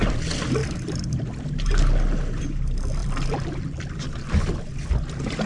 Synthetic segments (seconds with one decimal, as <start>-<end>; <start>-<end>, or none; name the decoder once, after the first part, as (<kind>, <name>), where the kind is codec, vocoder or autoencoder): 0.6-1.2 (vocoder, BigVGAN v2); 3.0-4.0